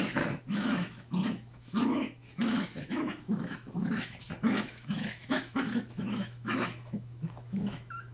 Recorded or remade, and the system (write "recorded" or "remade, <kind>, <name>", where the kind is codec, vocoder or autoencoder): remade, autoencoder, DAC-VAE